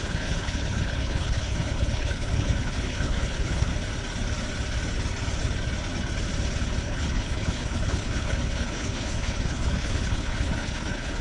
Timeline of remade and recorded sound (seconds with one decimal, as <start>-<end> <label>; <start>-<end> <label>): 0.0-3.7 remade; 3.7-6.8 recorded; 6.8-11.2 remade